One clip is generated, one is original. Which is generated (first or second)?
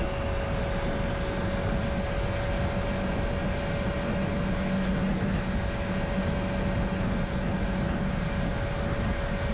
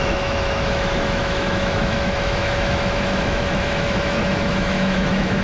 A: second